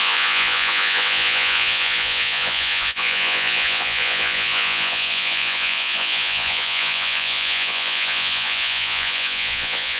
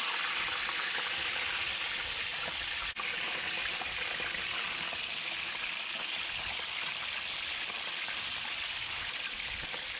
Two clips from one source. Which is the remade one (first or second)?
first